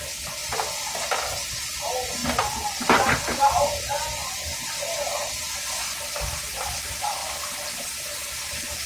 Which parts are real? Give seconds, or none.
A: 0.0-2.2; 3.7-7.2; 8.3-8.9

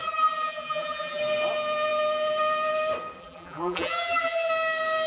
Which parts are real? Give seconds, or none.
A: 1.2-3.2; 4.5-5.1

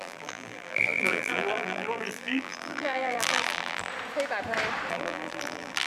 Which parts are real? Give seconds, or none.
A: 3.9-4.9

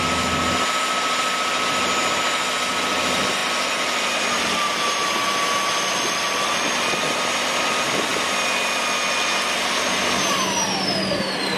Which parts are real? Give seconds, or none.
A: 0.0-11.6

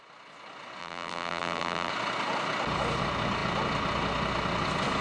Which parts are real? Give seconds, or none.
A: 0.0-0.8; 1.9-5.0

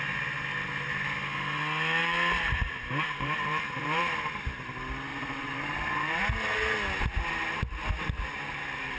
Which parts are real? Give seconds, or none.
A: 0.0-2.0; 4.1-5.1; 6.2-9.0

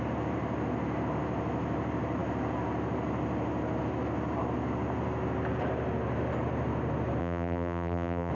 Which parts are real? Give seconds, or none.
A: 0.0-7.2